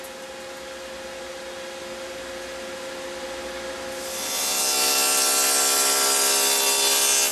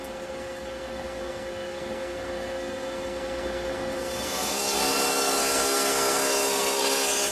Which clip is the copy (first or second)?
second